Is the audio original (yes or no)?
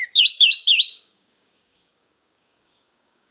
no